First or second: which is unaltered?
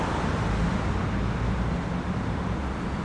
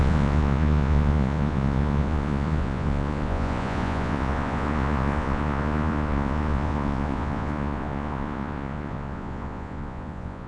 first